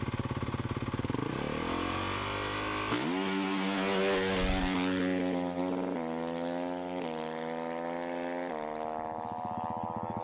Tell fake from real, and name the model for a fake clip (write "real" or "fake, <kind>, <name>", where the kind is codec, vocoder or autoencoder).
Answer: real